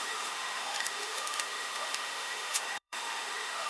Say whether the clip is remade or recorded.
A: remade